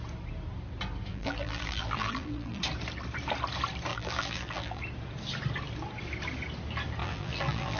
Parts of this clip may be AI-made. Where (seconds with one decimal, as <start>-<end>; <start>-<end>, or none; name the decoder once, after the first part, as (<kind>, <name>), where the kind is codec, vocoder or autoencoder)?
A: 1.1-2.6 (vocoder, BigVGAN v2); 3.9-4.8; 7.0-7.8